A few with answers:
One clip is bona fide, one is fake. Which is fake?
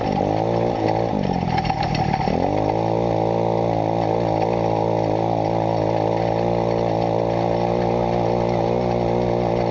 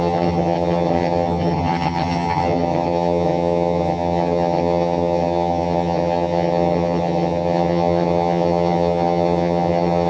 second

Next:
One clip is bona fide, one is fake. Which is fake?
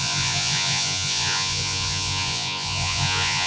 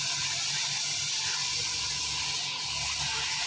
first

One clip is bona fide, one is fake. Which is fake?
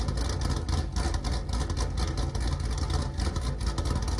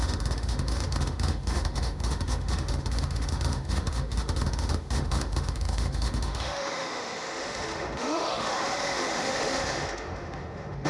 second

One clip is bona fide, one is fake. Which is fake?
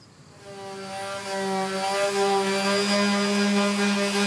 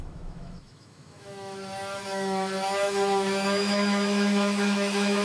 second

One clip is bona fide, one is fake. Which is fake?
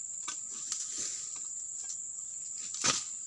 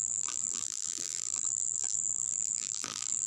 second